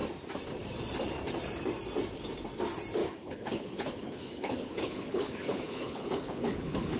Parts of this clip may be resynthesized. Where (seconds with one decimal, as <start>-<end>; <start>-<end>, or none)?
3.0-7.0